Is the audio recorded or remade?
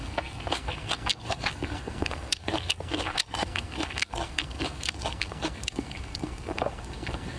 remade